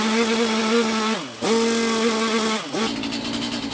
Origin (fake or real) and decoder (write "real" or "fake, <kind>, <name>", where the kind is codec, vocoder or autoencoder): real